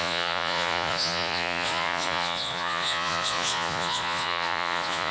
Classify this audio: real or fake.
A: fake